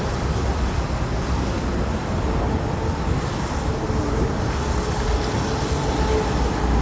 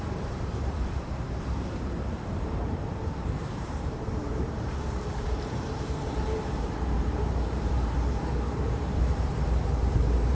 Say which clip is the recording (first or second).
first